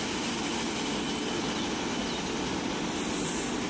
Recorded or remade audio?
recorded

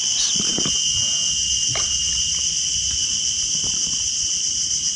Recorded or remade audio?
recorded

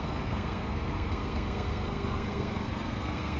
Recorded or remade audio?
remade